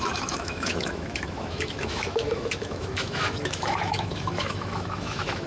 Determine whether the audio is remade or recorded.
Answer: remade